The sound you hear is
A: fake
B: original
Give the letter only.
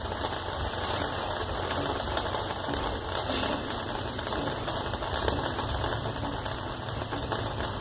B